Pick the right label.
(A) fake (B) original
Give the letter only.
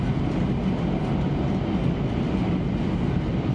B